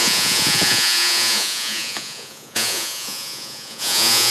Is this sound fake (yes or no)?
yes